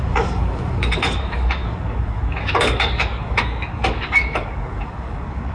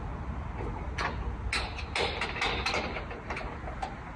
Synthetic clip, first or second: first